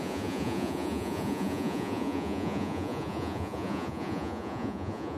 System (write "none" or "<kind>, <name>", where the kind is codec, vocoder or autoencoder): vocoder, Vocos